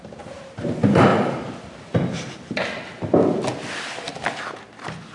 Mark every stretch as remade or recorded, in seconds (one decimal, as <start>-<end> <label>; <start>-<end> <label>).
0.0-5.1 recorded